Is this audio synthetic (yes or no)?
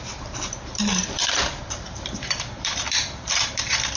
yes